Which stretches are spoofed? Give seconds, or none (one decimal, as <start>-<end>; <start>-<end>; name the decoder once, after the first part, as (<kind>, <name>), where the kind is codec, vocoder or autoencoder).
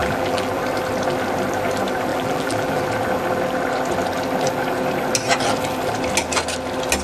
0.0-0.6 (vocoder, BigVGAN v2); 2.1-2.8